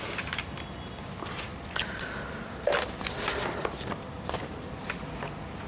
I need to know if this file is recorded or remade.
recorded